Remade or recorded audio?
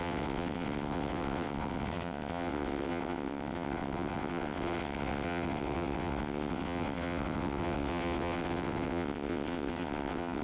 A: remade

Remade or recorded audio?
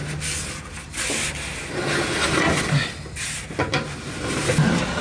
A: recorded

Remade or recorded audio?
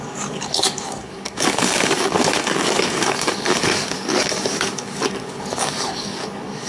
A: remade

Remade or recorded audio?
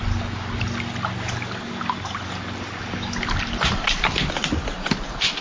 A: recorded